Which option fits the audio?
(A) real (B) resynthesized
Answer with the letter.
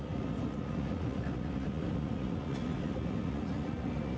B